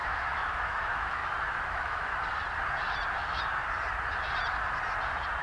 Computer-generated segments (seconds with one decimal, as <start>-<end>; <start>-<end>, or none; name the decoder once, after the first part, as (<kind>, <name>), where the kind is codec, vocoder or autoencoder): 0.0-1.2 (autoencoder, DAC-VAE); 1.7-2.1